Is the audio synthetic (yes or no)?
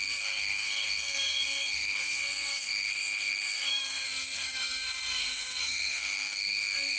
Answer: yes